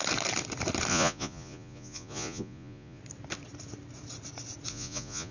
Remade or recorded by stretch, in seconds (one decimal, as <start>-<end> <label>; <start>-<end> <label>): 0.0-0.9 recorded; 0.9-3.0 remade; 3.0-4.7 recorded; 4.7-5.3 remade